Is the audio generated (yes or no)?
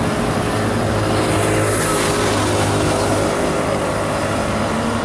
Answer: no